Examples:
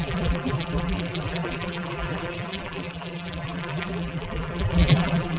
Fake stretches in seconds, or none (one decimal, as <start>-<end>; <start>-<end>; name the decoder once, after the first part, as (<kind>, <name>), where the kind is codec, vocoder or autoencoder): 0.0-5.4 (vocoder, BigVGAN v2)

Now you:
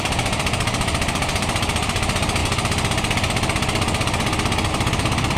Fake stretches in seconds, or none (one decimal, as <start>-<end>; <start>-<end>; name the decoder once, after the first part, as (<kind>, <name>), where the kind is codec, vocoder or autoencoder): 0.0-2.4 (vocoder, BigVGAN v2); 4.7-5.4

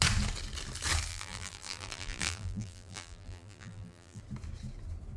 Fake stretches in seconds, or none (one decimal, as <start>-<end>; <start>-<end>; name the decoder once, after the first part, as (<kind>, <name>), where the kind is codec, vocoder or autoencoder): 1.1-4.2 (vocoder, BigVGAN v2)